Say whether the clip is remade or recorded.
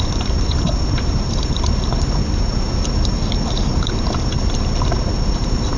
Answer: remade